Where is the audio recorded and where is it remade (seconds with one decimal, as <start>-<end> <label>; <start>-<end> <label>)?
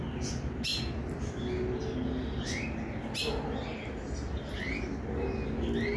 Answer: 0.0-6.0 recorded